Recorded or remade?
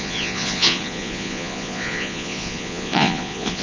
remade